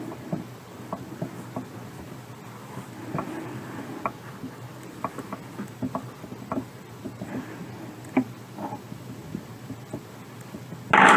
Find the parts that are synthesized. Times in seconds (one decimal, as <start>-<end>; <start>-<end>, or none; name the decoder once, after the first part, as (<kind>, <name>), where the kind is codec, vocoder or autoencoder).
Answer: none